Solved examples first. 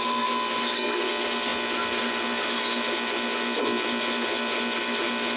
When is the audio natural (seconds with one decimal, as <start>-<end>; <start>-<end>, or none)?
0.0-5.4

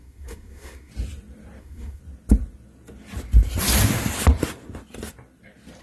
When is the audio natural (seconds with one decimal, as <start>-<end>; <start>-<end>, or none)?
0.9-1.6; 2.0-5.8

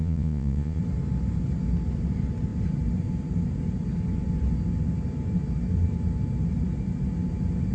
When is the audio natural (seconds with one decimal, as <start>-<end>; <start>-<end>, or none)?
0.8-7.7